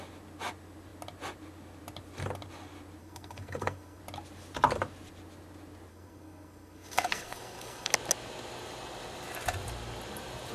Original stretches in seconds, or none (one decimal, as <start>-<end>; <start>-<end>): 0.0-3.0; 4.0-5.9; 7.9-10.5